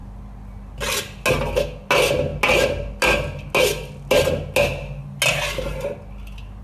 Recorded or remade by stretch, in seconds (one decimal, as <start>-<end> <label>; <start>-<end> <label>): 0.0-6.6 recorded